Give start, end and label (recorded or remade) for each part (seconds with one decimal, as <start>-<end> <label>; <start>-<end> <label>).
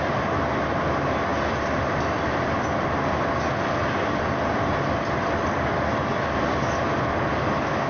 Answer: 0.0-7.9 recorded